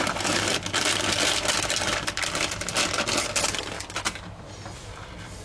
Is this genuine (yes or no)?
yes